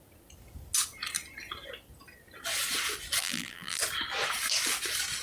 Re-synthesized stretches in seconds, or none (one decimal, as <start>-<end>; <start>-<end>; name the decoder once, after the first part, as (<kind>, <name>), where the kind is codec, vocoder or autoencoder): 3.2-3.8 (vocoder, BigVGAN v2)